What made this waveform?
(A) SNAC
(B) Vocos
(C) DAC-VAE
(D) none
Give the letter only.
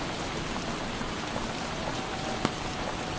D